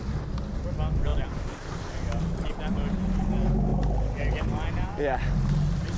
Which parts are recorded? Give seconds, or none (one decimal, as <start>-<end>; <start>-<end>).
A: 0.0-6.0